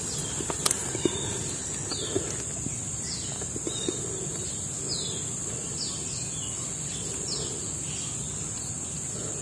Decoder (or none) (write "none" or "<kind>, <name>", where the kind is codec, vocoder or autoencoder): none